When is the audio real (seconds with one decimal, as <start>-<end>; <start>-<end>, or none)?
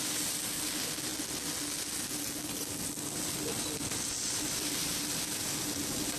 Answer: 1.1-2.5